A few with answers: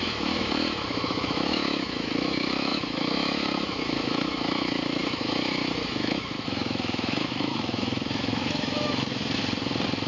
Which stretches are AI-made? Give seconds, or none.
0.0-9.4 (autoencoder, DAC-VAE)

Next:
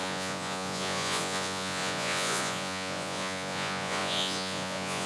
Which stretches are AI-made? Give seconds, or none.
0.0-5.1 (vocoder, Vocos)

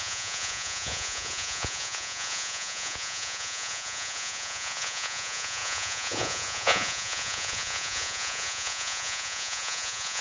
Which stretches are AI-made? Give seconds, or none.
0.0-10.2 (vocoder, Vocos)

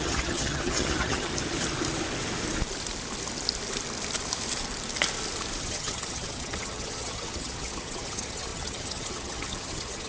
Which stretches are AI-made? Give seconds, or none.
0.0-1.3 (vocoder, HiFi-GAN); 5.6-10.1

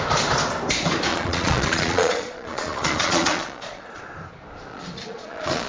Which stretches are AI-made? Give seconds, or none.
1.1-4.0 (vocoder, Vocos); 4.7-5.7

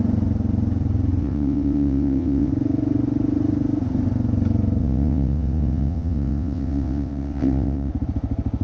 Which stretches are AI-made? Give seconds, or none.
1.2-2.5 (vocoder, WaveNeXt); 4.8-7.9

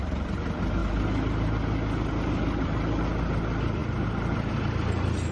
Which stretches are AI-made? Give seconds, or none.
0.0-0.8 (vocoder, BigVGAN v2); 3.0-5.3

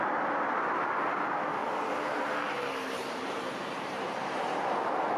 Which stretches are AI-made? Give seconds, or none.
1.6-4.7 (vocoder, BigVGAN v2)